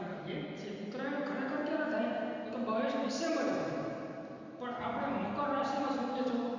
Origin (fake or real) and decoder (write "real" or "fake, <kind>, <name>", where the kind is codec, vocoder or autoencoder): real